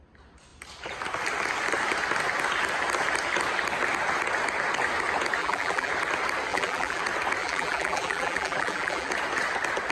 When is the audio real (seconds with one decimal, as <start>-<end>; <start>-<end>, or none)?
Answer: 0.0-5.4; 5.9-6.5; 7.0-7.4; 9.1-9.9